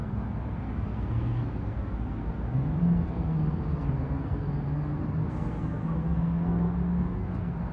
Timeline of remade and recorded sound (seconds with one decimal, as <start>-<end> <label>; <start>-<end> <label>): 0.0-7.7 remade

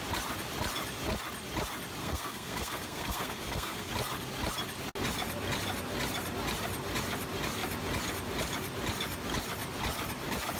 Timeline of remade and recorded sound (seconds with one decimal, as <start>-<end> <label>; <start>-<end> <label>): 0.0-2.0 recorded; 2.0-3.9 remade; 3.9-10.6 recorded

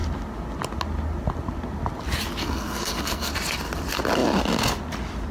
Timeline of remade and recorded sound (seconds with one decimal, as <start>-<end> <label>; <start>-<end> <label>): 0.0-2.4 recorded; 2.4-3.3 remade; 3.3-5.3 recorded

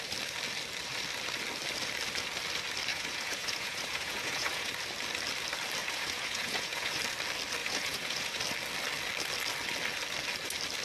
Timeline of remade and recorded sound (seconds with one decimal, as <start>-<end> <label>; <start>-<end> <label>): 0.0-2.9 recorded; 2.9-4.7 remade; 4.7-5.8 recorded; 5.8-7.0 remade; 7.0-7.6 recorded; 7.6-8.4 remade; 8.4-10.8 recorded

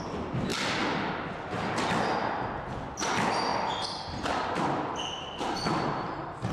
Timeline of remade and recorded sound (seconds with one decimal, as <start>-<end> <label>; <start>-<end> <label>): 0.0-3.5 recorded; 3.5-6.5 remade

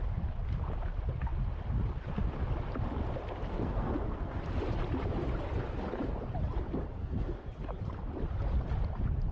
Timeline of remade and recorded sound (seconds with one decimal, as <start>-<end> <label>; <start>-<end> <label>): 0.0-3.5 recorded; 3.5-4.4 remade; 4.4-7.0 recorded; 7.0-7.5 remade; 7.5-9.3 recorded

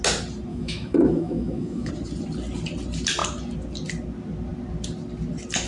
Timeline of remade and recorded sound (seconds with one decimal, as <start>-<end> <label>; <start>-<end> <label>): 0.0-0.5 recorded; 0.5-1.9 remade; 1.9-5.7 recorded

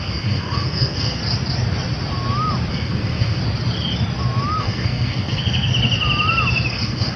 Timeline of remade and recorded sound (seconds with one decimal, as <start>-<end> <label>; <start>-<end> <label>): 0.0-1.2 remade; 1.2-2.7 recorded; 2.7-3.4 remade; 3.4-4.6 recorded; 4.6-5.7 remade; 5.7-6.7 recorded; 6.7-7.2 remade